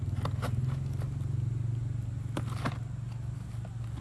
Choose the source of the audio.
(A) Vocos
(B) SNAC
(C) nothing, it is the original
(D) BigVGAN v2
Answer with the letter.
C